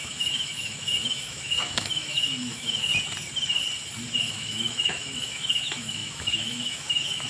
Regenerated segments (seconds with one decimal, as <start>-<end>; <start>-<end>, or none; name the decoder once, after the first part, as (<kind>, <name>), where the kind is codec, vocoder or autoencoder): 0.0-2.9 (autoencoder, DAC-VAE); 4.2-7.3